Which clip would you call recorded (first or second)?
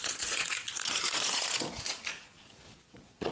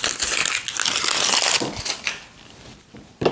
second